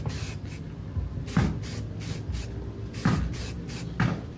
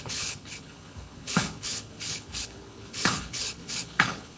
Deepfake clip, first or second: second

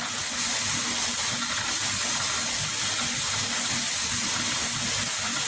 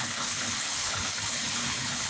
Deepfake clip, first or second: second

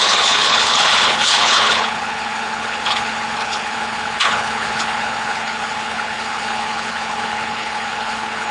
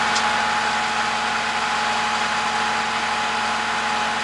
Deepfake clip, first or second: first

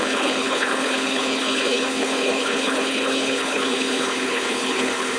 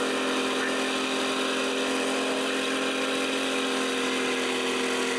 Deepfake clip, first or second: first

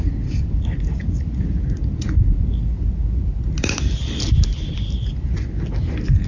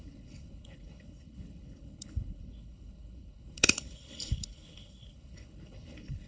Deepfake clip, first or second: second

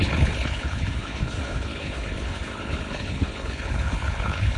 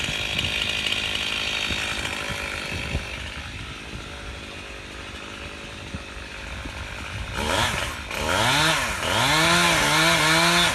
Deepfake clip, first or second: first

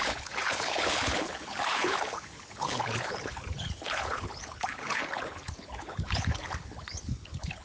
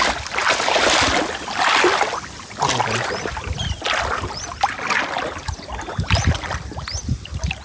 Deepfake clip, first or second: first